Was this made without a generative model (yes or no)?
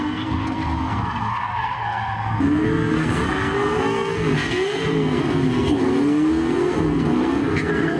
no